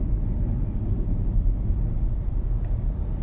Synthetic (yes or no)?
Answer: yes